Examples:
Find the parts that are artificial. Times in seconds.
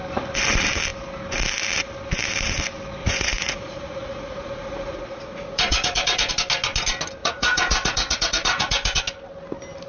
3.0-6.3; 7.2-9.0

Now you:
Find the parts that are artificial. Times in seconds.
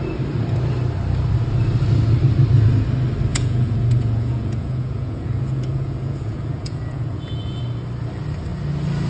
3.3-7.6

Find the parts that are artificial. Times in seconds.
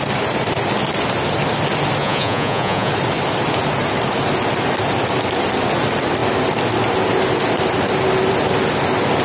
2.0-2.9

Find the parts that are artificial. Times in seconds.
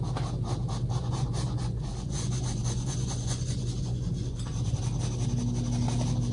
1.0-4.8